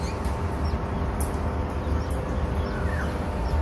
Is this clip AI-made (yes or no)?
no